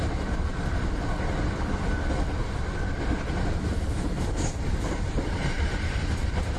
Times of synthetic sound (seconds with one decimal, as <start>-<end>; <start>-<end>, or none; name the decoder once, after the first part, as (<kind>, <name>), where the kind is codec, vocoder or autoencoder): 0.0-0.5 (vocoder, BigVGAN v2); 3.7-6.6